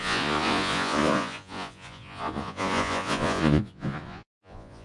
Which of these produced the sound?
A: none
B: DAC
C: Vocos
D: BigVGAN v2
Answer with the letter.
C